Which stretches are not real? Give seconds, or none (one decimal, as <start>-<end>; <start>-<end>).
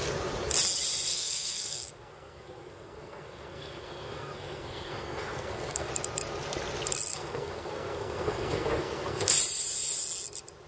1.1-5.9; 7.1-9.3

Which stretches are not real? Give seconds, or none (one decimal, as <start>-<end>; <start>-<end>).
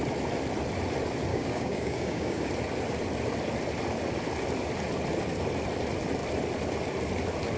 1.3-2.5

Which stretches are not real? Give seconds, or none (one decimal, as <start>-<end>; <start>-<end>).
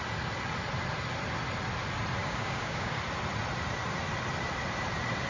2.2-3.0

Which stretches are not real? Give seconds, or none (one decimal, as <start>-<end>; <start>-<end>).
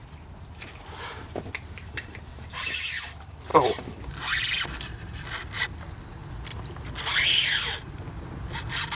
0.0-1.5; 3.5-5.1; 6.5-8.0